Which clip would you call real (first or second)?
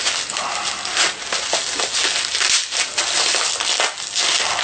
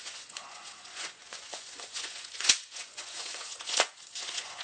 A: first